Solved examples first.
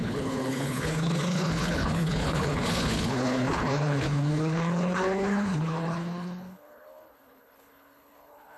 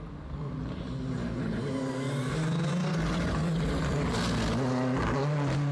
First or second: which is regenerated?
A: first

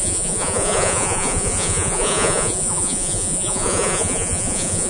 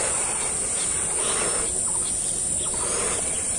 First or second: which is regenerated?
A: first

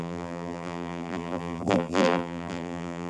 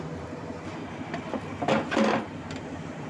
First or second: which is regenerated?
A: first